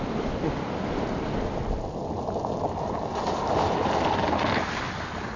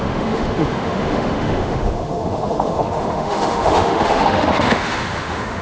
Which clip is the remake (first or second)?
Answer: second